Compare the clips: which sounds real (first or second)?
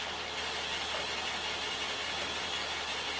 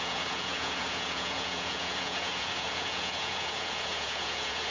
first